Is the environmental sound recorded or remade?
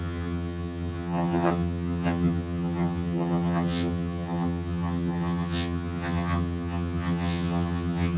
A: remade